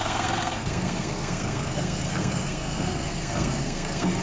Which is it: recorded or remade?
remade